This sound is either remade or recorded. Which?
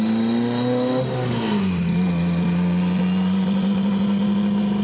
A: recorded